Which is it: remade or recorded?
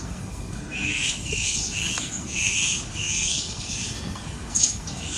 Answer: remade